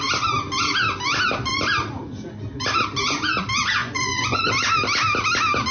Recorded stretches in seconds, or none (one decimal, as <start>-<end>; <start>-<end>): 0.0-3.8; 4.5-5.7